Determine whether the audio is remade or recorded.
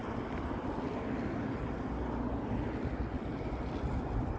recorded